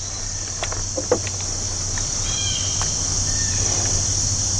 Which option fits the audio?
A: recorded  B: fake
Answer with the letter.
A